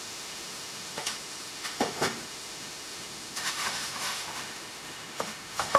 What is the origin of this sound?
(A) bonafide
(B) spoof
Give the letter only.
B